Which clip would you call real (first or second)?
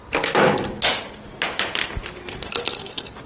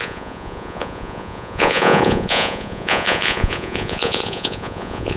first